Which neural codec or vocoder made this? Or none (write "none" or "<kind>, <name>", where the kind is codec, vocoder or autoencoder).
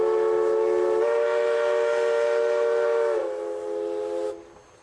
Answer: none